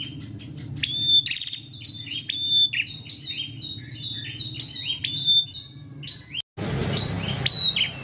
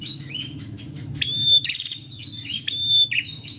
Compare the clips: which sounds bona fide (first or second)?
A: first